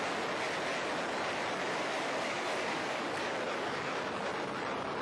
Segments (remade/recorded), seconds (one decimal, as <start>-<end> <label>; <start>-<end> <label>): 0.0-1.8 recorded; 1.8-4.0 remade; 4.0-5.0 recorded